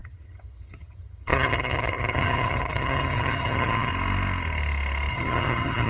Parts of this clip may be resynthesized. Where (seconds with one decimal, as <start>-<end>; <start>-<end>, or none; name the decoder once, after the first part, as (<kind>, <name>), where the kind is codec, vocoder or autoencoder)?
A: 0.0-3.9 (vocoder, HiFi-GAN); 5.1-5.9